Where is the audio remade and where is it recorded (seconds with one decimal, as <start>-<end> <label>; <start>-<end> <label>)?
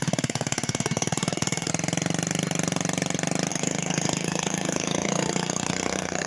0.0-1.7 remade; 1.7-3.5 recorded; 3.5-6.3 remade